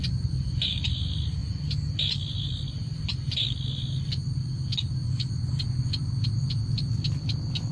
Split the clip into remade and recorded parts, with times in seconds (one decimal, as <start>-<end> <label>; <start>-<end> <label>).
0.0-7.7 recorded